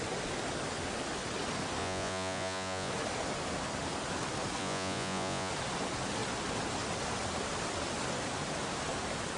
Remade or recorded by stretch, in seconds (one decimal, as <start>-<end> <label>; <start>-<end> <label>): 0.0-1.8 recorded; 1.8-2.9 remade; 2.9-4.6 recorded; 4.6-5.5 remade; 5.5-9.4 recorded